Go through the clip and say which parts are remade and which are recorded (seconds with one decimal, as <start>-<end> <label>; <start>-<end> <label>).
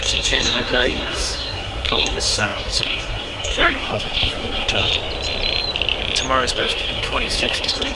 0.0-4.9 remade; 4.9-6.5 recorded; 6.5-7.9 remade